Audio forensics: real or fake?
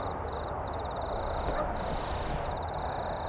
real